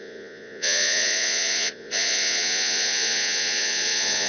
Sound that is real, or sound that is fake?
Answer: fake